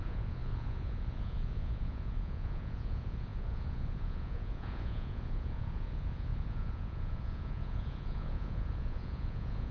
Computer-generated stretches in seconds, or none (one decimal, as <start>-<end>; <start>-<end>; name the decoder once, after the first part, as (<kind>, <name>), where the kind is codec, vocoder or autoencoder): 0.0-9.7 (vocoder, Vocos)

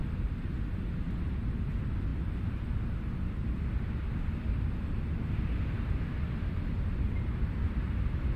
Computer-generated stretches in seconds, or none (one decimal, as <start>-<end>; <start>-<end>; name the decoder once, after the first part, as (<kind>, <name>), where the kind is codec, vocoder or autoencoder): none

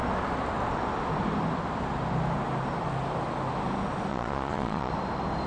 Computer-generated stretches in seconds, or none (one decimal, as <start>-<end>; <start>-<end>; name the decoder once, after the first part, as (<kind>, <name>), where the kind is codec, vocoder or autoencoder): 4.1-4.9 (vocoder, Vocos)

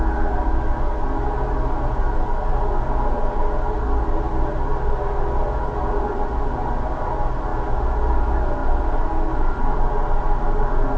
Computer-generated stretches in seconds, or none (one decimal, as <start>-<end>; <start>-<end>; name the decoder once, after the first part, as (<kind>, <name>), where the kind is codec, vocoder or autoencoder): none

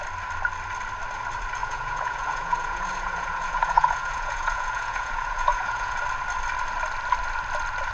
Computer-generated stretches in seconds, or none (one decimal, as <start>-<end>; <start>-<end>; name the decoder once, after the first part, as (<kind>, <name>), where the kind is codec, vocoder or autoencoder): 1.6-6.0 (vocoder, Vocos)

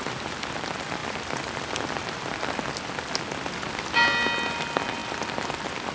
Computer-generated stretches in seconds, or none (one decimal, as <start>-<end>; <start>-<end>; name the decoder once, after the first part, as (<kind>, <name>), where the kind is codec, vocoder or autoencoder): none

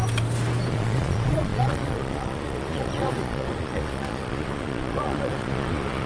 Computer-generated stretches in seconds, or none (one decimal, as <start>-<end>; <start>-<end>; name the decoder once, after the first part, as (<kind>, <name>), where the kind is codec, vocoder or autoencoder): 0.7-6.1 (vocoder, Vocos)

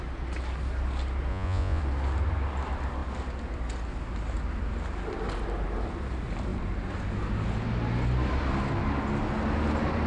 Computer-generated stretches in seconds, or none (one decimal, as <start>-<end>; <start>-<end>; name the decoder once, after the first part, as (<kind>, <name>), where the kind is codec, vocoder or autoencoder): 1.3-1.8 (vocoder, Vocos)